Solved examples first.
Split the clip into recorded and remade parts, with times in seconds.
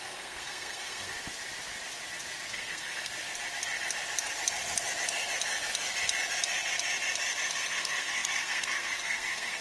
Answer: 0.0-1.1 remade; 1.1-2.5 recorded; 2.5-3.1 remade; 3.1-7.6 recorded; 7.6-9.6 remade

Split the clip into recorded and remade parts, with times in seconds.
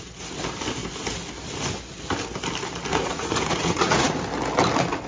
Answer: 0.0-2.9 recorded; 2.9-4.2 remade; 4.2-5.1 recorded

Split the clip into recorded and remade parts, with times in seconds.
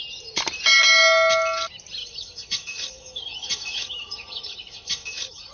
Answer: 0.0-2.0 recorded; 2.0-5.5 remade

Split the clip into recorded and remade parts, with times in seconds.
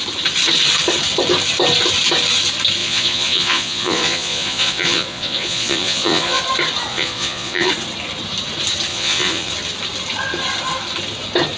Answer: 0.0-2.8 recorded; 2.8-6.4 remade; 6.4-6.9 recorded; 6.9-7.7 remade; 7.7-8.9 recorded; 8.9-9.5 remade; 9.5-11.6 recorded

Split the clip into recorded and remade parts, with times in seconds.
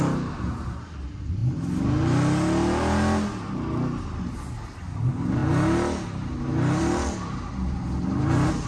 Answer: 0.0-8.7 recorded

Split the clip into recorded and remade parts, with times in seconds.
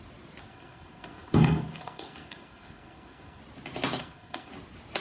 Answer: 0.0-0.4 recorded; 0.4-3.4 remade; 3.4-4.0 recorded; 4.0-4.5 remade; 4.5-5.0 recorded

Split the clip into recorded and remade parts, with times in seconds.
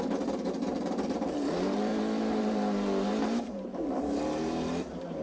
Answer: 0.0-1.9 remade; 1.9-2.4 recorded; 2.4-5.2 remade